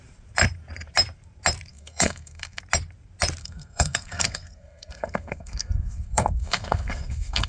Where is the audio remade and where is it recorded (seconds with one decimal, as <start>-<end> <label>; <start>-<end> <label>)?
0.0-1.7 recorded; 1.7-2.6 remade; 2.6-3.4 recorded; 3.4-7.5 remade

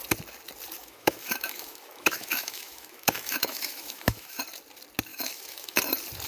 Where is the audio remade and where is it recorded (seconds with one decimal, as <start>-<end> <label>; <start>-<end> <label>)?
0.0-0.8 recorded; 0.8-4.4 remade; 4.4-5.1 recorded; 5.1-5.8 remade; 5.8-6.3 recorded

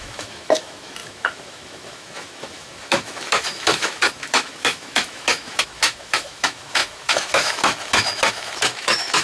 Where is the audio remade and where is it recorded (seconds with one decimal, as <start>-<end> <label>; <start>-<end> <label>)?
0.0-9.2 remade